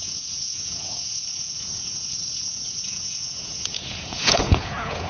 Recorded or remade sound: remade